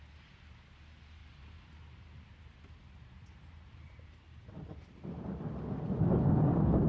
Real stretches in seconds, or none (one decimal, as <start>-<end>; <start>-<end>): 0.0-1.2; 5.3-6.9